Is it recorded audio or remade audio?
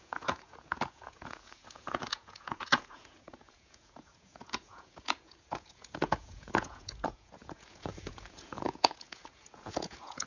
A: remade